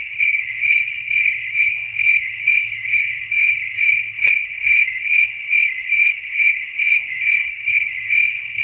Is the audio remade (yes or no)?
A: yes